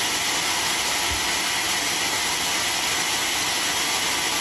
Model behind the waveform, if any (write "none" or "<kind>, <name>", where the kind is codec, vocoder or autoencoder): none